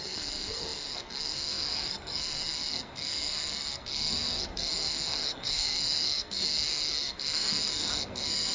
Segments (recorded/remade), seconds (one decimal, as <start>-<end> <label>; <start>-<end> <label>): 0.0-8.5 remade